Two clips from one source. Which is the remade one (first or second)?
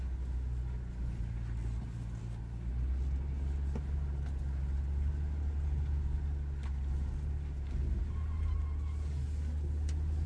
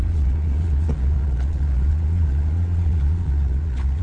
second